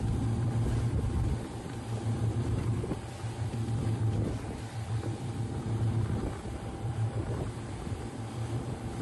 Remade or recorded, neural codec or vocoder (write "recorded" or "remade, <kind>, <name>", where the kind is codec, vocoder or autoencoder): remade, vocoder, BigVGAN v2